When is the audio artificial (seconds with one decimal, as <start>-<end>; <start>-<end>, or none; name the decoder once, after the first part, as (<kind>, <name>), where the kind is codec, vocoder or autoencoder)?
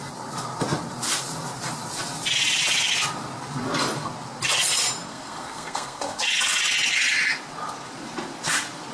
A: 5.1-6.2 (codec, SNAC)